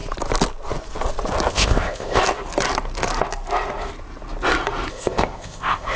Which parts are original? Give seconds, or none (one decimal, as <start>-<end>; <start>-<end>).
0.0-1.5; 2.2-4.9